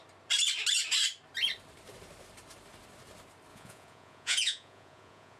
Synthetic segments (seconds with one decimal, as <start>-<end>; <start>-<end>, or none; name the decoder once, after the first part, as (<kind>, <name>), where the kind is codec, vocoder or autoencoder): 3.5-5.4 (vocoder, Vocos)